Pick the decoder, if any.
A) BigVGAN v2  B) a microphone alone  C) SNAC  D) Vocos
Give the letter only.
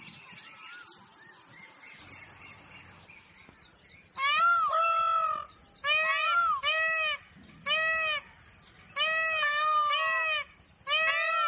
B